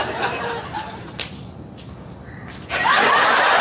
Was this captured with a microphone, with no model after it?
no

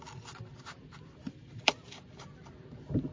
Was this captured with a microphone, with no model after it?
yes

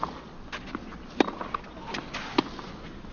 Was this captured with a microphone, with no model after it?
yes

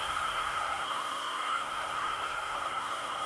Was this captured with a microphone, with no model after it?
no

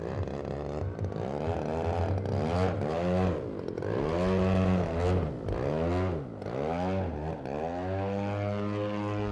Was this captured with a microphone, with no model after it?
yes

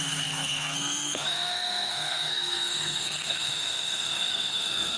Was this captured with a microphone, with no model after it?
no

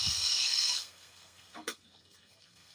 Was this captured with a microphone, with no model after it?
no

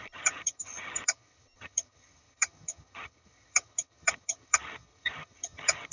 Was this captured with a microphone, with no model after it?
no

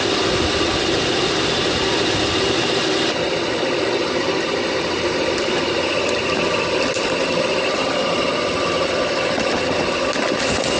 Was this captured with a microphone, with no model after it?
yes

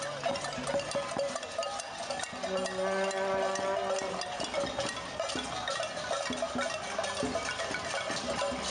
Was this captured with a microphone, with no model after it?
yes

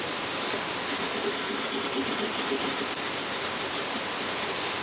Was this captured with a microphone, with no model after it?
yes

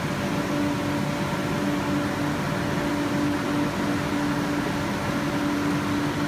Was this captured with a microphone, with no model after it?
yes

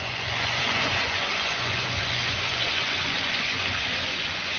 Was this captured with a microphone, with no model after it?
no